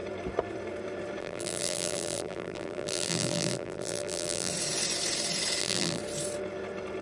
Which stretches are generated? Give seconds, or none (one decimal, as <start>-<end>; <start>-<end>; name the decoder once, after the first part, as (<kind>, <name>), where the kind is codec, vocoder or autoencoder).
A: 1.2-4.5 (vocoder, BigVGAN v2); 5.6-6.0